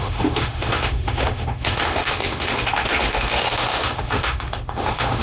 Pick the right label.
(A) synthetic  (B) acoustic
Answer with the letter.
A